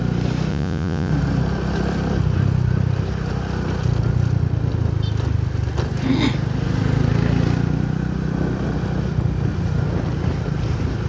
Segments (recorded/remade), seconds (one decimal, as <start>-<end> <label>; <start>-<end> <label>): 0.0-0.5 recorded; 0.5-1.1 remade; 1.1-11.1 recorded